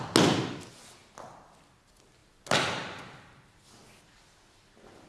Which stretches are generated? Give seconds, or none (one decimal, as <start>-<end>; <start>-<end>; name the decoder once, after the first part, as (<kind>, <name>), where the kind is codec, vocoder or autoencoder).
none